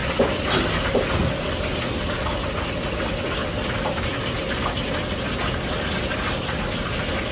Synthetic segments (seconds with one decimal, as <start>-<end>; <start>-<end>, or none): 0.0-0.6